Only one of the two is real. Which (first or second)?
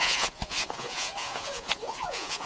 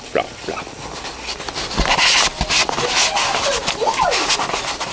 second